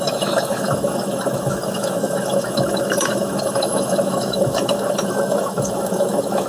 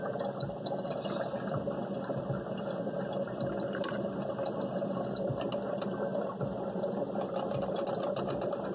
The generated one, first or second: first